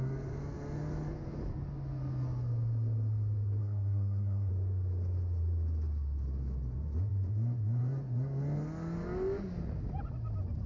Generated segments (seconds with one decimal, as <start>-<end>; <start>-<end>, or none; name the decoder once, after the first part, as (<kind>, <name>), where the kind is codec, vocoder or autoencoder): 3.6-4.5 (codec, SNAC)